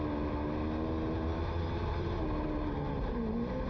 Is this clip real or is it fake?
real